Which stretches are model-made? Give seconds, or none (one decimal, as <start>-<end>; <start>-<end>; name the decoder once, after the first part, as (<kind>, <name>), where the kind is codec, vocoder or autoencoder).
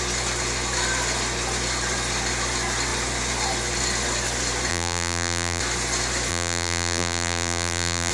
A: 4.7-5.6 (vocoder, BigVGAN v2); 6.3-8.1